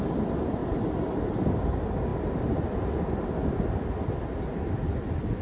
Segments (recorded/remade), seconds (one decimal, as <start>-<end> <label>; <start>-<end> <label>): 0.0-0.6 recorded; 0.6-1.1 remade; 1.1-5.4 recorded